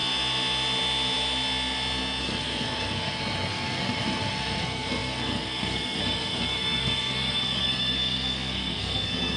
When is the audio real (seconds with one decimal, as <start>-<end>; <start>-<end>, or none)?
0.0-2.2

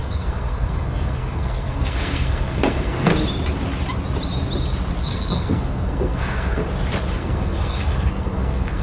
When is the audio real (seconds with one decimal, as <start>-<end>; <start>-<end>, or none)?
3.1-5.0; 6.6-7.1

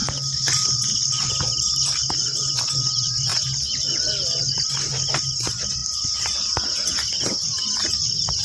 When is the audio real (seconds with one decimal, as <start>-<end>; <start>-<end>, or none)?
0.0-8.4

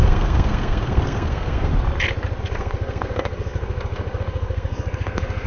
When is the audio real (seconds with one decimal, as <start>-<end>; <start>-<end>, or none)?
1.7-2.4

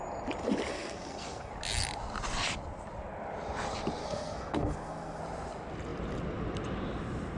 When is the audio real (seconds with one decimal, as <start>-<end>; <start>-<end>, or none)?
0.0-0.7; 1.5-4.0; 5.2-7.4